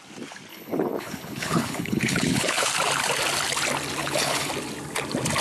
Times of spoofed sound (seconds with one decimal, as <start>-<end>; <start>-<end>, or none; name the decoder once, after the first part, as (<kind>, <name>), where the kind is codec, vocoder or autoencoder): 0.5-2.7 (codec, HILCodec); 4.0-4.5